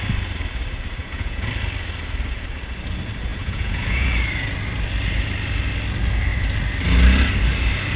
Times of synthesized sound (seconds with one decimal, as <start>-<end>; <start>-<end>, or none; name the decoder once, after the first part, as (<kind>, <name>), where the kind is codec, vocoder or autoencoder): 1.0-1.5 (vocoder, Vocos); 3.3-4.1